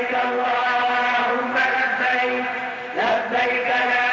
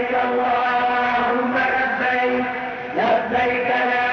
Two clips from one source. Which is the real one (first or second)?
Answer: first